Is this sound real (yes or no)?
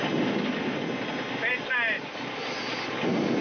yes